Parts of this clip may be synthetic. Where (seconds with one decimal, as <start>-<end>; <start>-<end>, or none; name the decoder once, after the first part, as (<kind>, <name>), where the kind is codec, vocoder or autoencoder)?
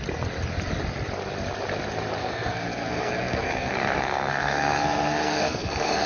2.2-6.1 (codec, SNAC)